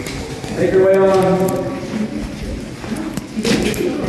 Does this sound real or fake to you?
real